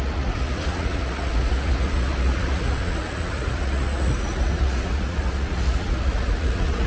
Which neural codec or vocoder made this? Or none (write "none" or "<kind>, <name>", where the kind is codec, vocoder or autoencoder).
vocoder, Vocos